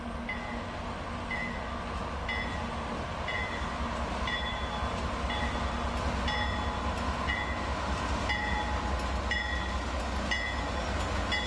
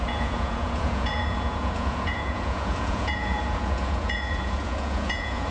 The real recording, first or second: first